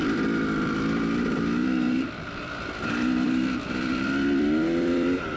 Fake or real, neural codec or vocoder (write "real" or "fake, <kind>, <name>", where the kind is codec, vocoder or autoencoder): fake, vocoder, BigVGAN v2